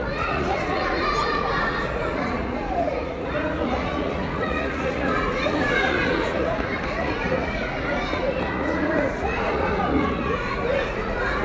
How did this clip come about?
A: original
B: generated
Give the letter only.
B